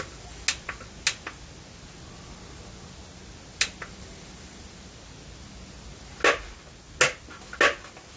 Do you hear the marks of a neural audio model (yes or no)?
no